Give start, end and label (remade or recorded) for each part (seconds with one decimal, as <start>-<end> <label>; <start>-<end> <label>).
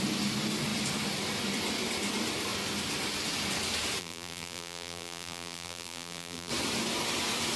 0.0-4.0 recorded; 4.0-6.5 remade; 6.5-7.6 recorded